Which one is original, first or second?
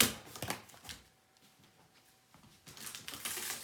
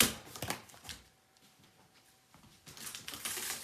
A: first